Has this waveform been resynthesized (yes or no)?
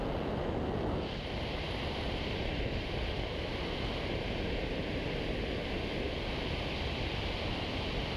no